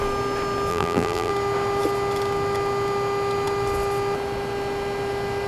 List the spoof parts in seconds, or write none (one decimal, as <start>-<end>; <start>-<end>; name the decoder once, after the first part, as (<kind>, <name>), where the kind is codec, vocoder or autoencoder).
0.7-1.3 (vocoder, BigVGAN v2)